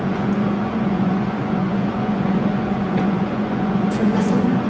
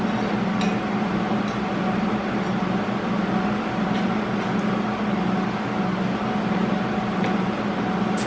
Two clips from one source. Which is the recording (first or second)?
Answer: second